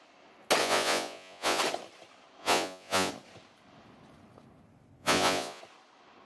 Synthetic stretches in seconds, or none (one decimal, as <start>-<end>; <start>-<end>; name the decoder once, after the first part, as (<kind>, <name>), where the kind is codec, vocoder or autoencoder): 0.6-1.6 (vocoder, Vocos); 2.4-3.1; 5.0-5.6